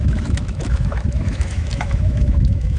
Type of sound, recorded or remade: remade